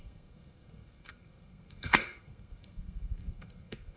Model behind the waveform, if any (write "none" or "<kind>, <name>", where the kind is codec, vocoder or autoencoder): codec, SNAC